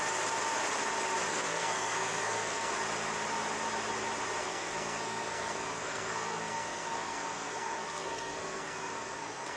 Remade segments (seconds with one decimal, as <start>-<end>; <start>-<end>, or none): 1.3-2.7; 4.4-9.6